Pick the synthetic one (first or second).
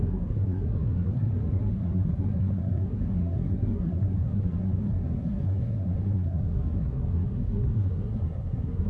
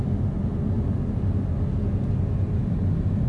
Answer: first